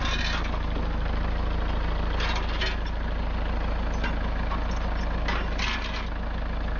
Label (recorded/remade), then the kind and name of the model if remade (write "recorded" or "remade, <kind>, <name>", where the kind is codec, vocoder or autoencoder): recorded